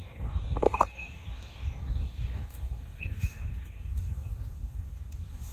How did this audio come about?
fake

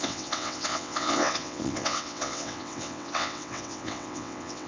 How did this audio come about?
fake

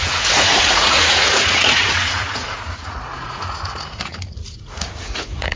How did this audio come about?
fake